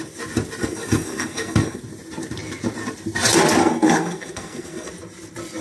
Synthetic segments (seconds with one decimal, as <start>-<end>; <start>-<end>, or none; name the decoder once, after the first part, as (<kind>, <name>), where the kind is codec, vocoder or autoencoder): 0.6-1.8 (codec, SNAC); 3.6-4.9